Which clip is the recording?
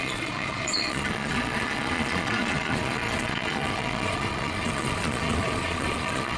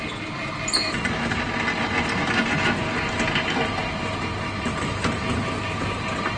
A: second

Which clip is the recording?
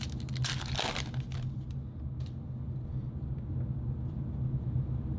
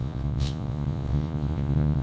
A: first